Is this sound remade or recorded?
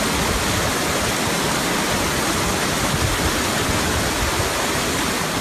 recorded